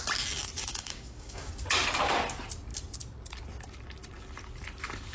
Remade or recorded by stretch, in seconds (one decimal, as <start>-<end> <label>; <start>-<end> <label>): 0.0-0.6 recorded; 0.6-1.5 remade; 1.5-5.1 recorded